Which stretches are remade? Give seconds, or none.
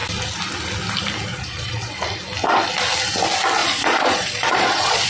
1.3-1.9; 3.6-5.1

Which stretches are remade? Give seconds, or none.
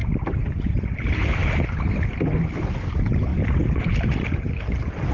none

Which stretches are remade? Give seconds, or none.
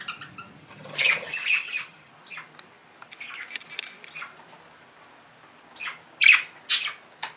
0.6-2.1